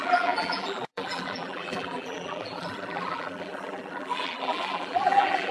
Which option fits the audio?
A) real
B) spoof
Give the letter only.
B